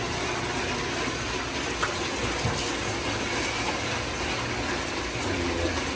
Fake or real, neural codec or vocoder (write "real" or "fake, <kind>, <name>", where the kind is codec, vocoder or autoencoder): real